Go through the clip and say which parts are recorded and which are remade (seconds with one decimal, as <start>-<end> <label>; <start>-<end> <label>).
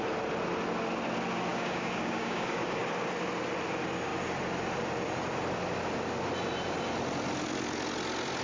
0.0-1.5 recorded; 1.5-2.8 remade; 2.8-8.4 recorded